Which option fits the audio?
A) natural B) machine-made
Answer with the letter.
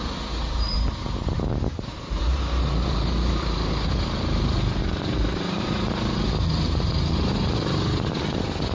B